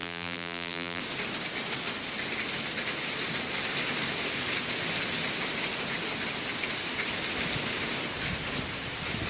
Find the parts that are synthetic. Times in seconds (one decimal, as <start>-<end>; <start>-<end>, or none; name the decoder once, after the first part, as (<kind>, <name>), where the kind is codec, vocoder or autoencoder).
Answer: 0.0-1.0 (vocoder, BigVGAN v2)